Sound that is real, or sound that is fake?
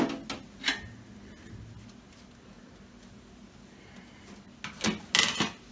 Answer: real